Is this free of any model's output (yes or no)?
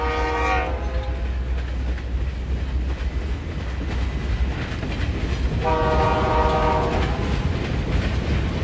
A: yes